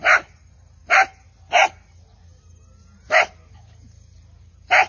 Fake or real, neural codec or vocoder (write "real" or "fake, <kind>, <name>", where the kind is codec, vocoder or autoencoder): real